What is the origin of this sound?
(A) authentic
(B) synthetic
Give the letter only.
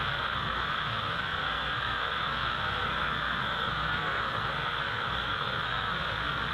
B